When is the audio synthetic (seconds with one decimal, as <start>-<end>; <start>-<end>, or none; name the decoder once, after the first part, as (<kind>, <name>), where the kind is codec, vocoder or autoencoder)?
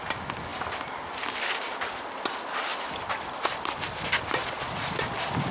0.5-2.0 (vocoder, BigVGAN v2); 2.7-4.5